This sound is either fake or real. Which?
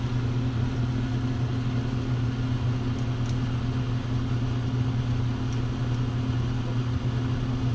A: real